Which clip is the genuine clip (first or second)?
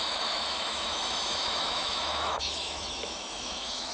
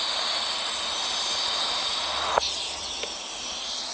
second